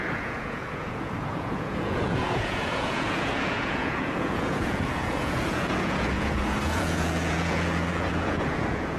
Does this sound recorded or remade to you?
remade